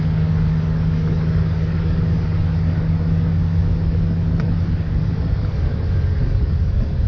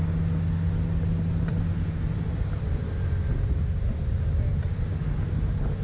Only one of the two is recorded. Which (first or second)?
second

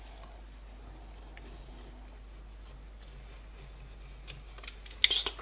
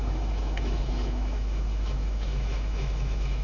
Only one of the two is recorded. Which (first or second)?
first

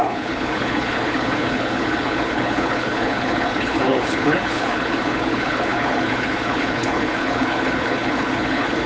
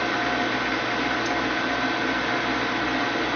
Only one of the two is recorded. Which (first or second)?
second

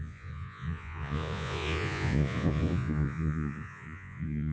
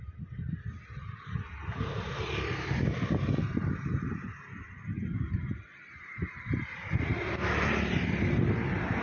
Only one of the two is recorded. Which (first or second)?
second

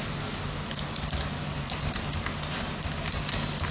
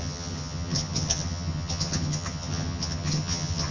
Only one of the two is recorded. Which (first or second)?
first